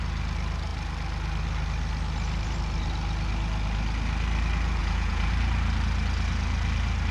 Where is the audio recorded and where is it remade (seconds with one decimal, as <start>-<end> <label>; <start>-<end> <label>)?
0.0-4.8 recorded; 4.8-5.3 remade; 5.3-7.1 recorded